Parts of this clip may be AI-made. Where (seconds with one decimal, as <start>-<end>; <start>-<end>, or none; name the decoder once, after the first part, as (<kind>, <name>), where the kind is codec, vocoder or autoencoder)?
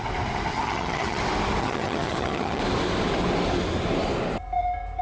0.5-1.2 (vocoder, HiFi-GAN); 1.6-2.6